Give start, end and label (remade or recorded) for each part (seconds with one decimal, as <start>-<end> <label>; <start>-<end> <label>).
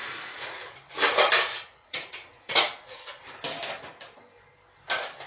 0.0-0.9 remade; 0.9-1.5 recorded; 1.5-3.2 remade; 3.2-5.3 recorded